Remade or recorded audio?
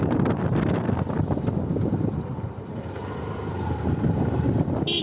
recorded